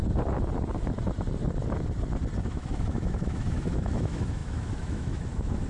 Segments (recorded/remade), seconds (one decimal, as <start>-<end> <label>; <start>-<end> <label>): 0.0-2.4 recorded; 2.4-5.7 remade